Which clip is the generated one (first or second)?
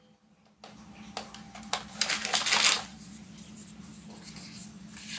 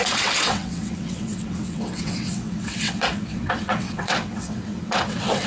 second